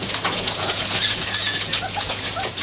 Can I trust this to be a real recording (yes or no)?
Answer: no